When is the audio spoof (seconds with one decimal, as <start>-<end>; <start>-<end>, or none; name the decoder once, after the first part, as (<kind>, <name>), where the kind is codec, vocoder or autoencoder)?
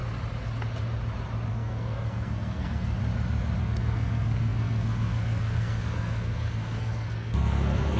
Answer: 1.5-3.0 (codec, SNAC); 3.6-8.0